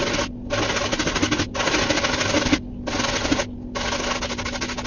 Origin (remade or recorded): recorded